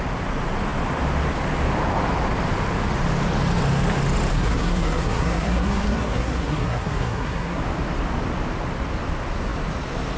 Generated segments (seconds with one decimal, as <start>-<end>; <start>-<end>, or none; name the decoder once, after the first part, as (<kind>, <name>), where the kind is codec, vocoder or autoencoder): 4.3-7.6 (codec, SNAC)